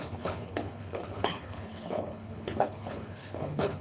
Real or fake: fake